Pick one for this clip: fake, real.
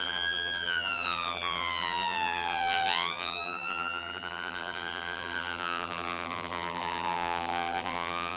fake